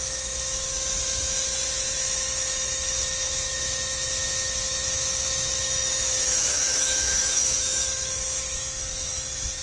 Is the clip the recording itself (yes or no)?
no